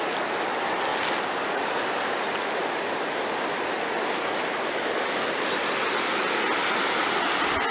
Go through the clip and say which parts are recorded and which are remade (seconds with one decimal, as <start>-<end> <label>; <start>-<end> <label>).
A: 0.0-7.7 recorded